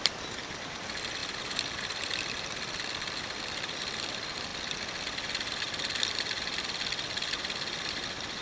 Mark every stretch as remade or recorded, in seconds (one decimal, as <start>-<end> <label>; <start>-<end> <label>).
0.0-8.4 recorded